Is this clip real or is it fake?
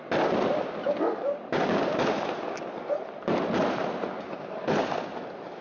real